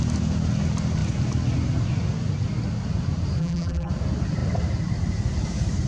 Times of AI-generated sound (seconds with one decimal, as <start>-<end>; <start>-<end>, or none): 3.4-3.9